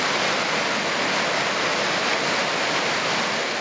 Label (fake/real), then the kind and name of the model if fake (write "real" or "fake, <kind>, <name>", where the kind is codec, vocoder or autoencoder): real